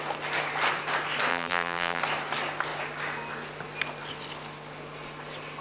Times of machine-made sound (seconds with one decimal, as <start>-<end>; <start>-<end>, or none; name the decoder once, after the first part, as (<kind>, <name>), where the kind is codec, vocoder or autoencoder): 1.3-2.0 (vocoder, BigVGAN v2)